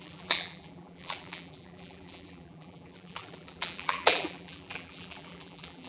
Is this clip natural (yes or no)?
no